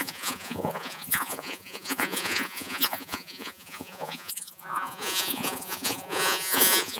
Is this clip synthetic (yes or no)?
yes